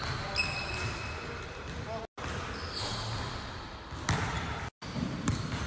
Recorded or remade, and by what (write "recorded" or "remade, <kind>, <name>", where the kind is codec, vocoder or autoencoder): recorded